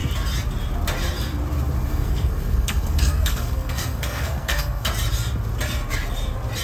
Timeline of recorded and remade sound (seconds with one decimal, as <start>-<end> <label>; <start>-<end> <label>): 0.0-1.9 recorded; 1.9-4.9 remade; 4.9-6.6 recorded